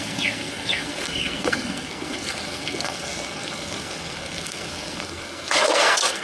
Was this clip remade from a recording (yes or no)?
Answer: yes